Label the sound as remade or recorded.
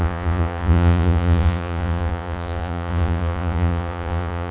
remade